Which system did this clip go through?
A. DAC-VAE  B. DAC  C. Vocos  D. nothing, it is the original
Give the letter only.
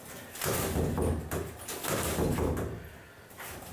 D